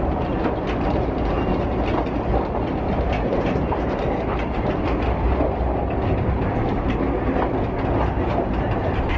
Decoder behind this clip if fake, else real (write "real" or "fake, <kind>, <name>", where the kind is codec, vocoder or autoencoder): real